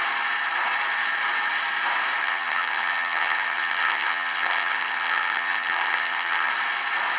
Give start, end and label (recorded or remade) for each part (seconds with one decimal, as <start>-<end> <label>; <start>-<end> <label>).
0.0-2.2 recorded; 2.2-6.5 remade; 6.5-7.2 recorded